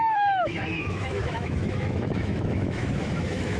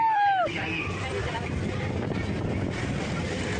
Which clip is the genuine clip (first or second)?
second